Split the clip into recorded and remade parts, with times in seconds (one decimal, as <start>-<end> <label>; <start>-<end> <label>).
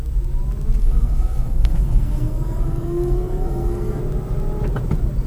0.0-0.8 recorded; 0.8-4.0 remade; 4.0-5.3 recorded